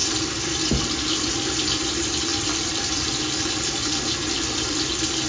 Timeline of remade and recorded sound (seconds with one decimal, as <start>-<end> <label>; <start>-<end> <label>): 0.0-1.7 remade; 1.7-2.3 recorded; 2.3-5.3 remade